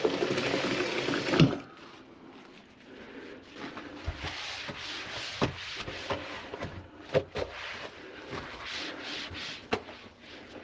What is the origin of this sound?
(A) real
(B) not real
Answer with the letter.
A